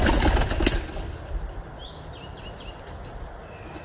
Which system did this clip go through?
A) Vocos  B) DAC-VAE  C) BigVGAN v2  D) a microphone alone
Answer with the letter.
D